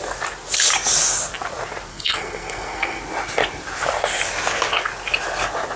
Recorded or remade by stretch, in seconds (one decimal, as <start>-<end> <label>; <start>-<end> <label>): 0.0-1.9 recorded; 1.9-3.0 remade; 3.0-5.8 recorded